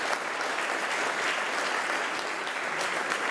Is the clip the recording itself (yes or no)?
yes